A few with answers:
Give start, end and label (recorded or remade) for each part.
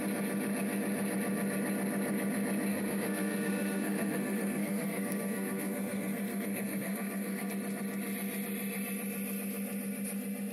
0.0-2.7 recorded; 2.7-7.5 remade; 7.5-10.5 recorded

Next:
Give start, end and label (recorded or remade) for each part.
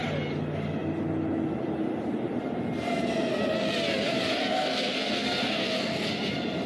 0.0-4.4 recorded; 4.4-6.1 remade; 6.1-6.7 recorded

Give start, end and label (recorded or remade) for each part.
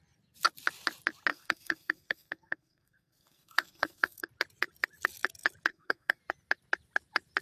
0.0-1.3 recorded; 1.3-4.3 remade; 4.3-5.7 recorded; 5.7-6.2 remade; 6.2-7.4 recorded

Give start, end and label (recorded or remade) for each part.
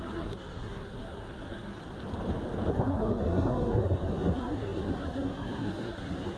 0.0-1.8 remade; 1.8-2.7 recorded; 2.7-6.4 remade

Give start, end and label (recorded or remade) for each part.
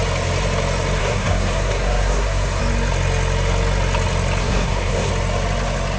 0.0-1.0 recorded; 1.0-2.6 remade; 2.6-4.4 recorded; 4.4-5.1 remade; 5.1-6.0 recorded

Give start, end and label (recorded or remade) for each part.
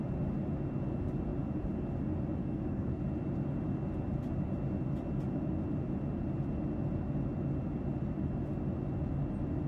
0.0-2.4 recorded; 2.4-3.0 remade; 3.0-9.7 recorded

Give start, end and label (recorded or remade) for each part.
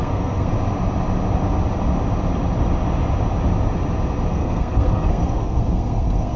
0.0-0.5 remade; 0.5-4.3 recorded; 4.3-6.4 remade